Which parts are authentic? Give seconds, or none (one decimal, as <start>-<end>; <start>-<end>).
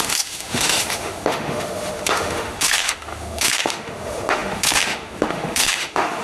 none